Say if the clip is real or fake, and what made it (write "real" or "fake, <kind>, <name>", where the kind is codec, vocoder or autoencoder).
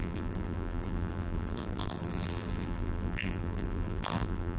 fake, vocoder, BigVGAN v2